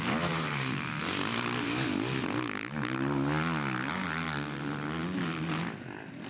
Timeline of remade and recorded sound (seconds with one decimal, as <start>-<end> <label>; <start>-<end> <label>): 0.0-6.3 recorded